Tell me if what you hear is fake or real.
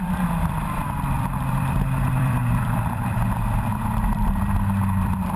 fake